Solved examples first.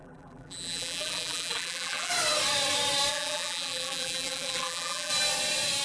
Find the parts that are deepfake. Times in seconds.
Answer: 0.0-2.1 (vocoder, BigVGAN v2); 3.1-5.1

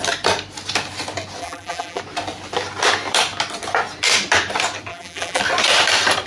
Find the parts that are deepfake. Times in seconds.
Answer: 1.4-2.0 (vocoder, BigVGAN v2); 4.9-5.4

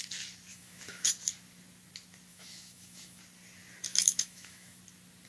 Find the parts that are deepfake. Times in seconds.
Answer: 0.5-1.1 (autoencoder, DAC-VAE); 2.3-3.2; 3.9-4.8

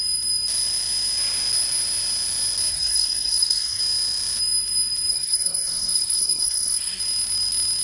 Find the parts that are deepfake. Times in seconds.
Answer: 2.7-3.8 (codec, SNAC); 5.1-7.0

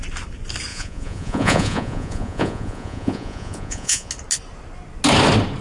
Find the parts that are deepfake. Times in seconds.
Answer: 0.7-4.1 (vocoder, Vocos)

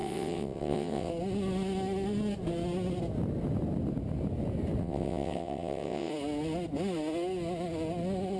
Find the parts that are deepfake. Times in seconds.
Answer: 0.0-1.1 (vocoder, WaveNeXt); 4.8-6.1